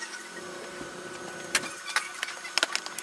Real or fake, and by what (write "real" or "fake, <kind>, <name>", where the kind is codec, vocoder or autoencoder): real